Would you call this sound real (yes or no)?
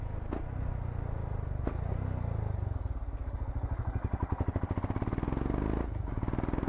yes